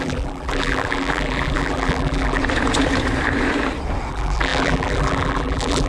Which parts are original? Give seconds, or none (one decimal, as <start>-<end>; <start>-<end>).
2.4-4.1